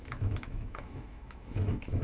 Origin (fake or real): fake